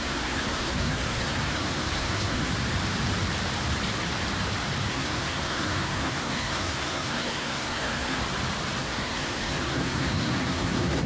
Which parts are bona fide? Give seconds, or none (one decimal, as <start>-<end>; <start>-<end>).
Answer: 2.5-4.9; 8.2-8.8